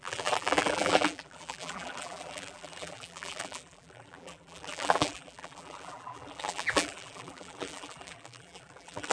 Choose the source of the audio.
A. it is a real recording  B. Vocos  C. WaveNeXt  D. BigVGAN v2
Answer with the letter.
D